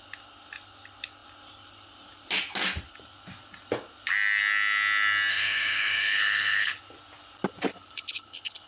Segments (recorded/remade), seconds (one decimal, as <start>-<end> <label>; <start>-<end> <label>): 0.0-5.3 recorded; 5.3-6.8 remade; 6.8-7.7 recorded; 7.7-8.7 remade